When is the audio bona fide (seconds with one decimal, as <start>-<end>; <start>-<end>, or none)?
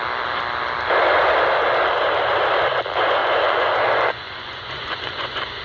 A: 0.0-3.2